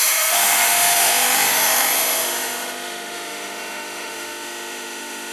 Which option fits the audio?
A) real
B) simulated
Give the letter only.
B